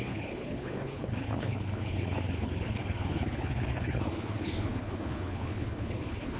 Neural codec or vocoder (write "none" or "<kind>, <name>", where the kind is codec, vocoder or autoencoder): codec, HILCodec